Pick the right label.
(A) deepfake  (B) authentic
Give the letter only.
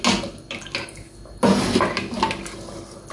B